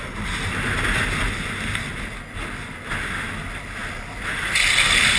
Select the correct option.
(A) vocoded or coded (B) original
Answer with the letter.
B